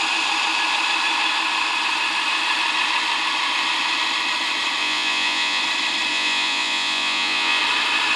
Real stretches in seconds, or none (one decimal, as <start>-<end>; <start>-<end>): 0.0-4.8; 5.6-6.1; 7.6-8.2